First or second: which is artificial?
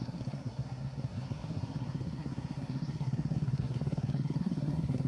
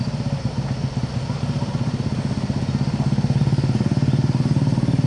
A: first